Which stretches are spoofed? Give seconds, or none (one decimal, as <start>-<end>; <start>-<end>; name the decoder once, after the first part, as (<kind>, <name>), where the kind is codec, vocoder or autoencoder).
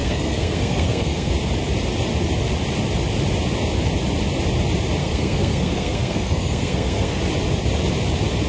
0.0-1.3 (codec, SNAC); 5.0-7.2